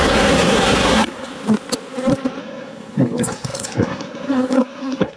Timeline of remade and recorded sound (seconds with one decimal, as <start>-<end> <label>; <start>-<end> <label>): 0.0-1.3 remade; 1.3-2.4 recorded; 2.4-5.2 remade